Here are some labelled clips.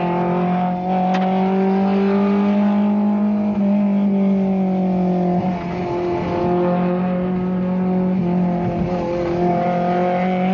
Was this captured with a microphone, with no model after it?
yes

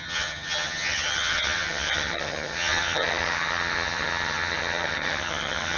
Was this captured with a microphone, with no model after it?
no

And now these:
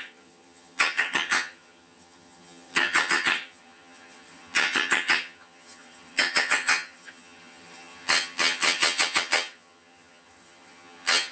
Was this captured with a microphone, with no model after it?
no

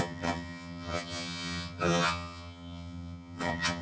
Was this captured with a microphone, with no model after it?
no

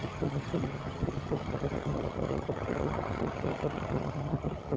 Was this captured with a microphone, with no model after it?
no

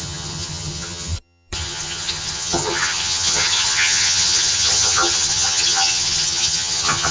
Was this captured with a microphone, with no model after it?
no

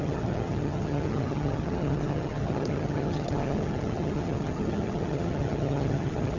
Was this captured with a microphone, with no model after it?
no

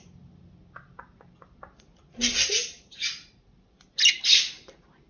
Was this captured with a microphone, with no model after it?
yes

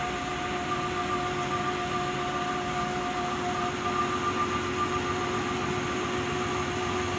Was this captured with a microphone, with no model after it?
yes